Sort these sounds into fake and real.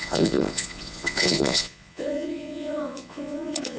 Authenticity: fake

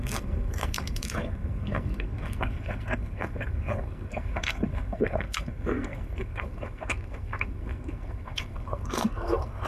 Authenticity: fake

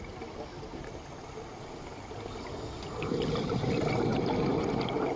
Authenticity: real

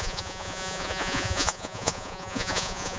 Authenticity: fake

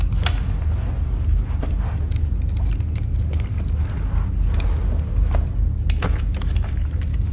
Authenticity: real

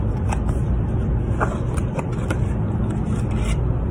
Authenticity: real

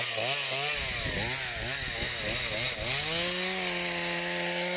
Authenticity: real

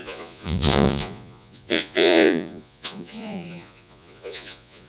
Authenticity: fake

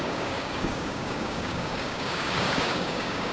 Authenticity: fake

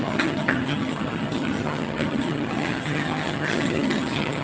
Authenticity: fake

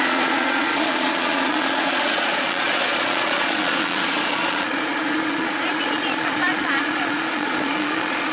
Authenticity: fake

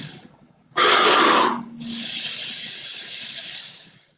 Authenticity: fake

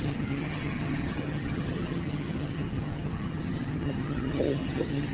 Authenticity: fake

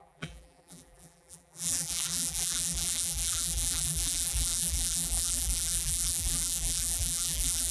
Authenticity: fake